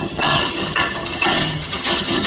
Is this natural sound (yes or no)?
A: no